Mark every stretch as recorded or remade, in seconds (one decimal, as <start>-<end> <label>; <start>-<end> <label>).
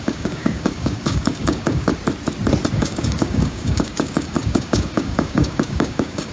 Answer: 0.0-1.9 remade; 1.9-2.7 recorded; 2.7-6.3 remade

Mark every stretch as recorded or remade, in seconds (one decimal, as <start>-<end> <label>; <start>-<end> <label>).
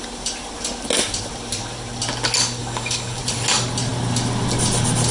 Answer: 0.0-2.6 recorded; 2.6-3.2 remade; 3.2-5.1 recorded